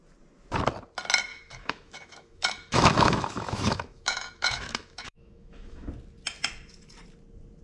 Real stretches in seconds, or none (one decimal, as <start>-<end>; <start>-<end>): 0.0-1.3; 5.9-7.6